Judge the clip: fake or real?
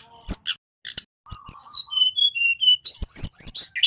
real